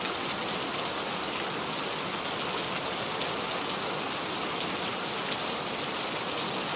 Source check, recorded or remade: recorded